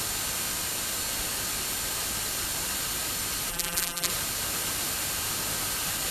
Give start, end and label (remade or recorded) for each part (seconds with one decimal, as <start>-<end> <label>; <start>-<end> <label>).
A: 0.0-3.5 recorded; 3.5-4.1 remade; 4.1-6.1 recorded